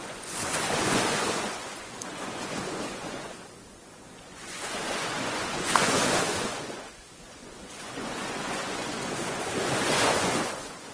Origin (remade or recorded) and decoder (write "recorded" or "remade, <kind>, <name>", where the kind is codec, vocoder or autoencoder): remade, vocoder, Vocos